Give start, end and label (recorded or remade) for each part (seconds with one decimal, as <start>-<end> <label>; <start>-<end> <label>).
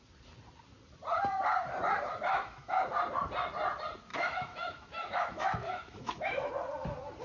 0.0-2.1 recorded; 2.1-2.8 remade; 2.8-4.1 recorded; 4.1-6.5 remade; 6.5-7.2 recorded